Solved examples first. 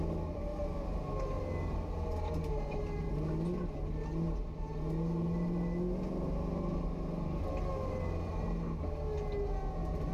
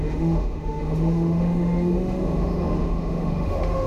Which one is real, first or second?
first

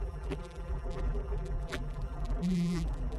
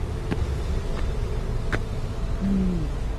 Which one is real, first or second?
second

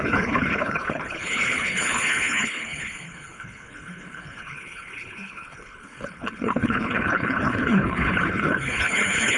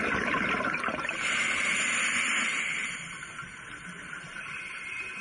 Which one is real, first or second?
second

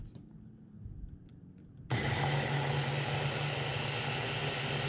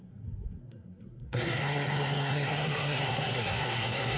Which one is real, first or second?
first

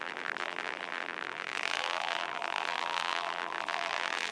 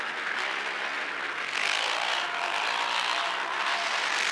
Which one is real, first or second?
second